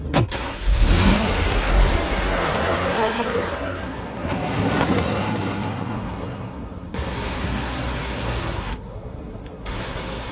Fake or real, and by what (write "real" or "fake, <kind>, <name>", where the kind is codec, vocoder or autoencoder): fake, codec, SNAC